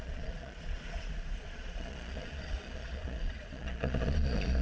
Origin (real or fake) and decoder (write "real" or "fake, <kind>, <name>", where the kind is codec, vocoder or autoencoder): fake, vocoder, Vocos